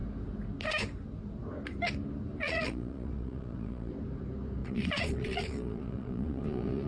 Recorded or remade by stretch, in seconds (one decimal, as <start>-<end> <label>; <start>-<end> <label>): 0.0-2.4 recorded; 2.4-3.9 remade; 3.9-4.6 recorded; 4.6-6.9 remade